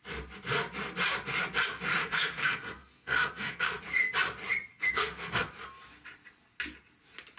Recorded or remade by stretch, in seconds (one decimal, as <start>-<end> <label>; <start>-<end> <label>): 0.0-2.0 recorded; 2.0-3.8 remade; 3.8-4.7 recorded; 4.7-5.5 remade; 5.5-7.4 recorded